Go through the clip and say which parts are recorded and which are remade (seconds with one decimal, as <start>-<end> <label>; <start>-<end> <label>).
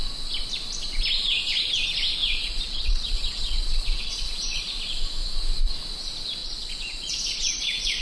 0.0-2.2 recorded; 2.2-4.6 remade; 4.6-6.4 recorded; 6.4-8.0 remade